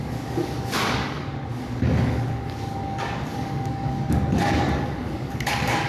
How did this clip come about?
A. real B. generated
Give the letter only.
B